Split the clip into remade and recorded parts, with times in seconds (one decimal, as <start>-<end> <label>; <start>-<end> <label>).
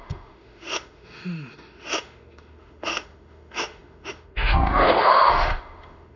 0.0-6.2 remade